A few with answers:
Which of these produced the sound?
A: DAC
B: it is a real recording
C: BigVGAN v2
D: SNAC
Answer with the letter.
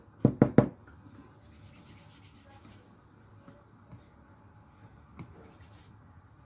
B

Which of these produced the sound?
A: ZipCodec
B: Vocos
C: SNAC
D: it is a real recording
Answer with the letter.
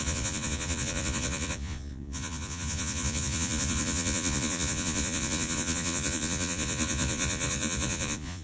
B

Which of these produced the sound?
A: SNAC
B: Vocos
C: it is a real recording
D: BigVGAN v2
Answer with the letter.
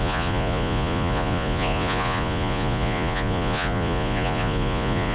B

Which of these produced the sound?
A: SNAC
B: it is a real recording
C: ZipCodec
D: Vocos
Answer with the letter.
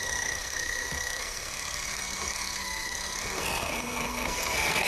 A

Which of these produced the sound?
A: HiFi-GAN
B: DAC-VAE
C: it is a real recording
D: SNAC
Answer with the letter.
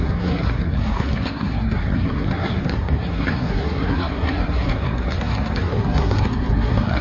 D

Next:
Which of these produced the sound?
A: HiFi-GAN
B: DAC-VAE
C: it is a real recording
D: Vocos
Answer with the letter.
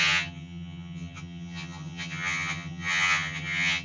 A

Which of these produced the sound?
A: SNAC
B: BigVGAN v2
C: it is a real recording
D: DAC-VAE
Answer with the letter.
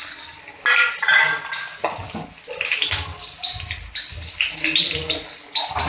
C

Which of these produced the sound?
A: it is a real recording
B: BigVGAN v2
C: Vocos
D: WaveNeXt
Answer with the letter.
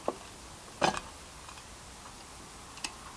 A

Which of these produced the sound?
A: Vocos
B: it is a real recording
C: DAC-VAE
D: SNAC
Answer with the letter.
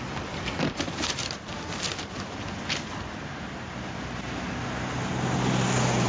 B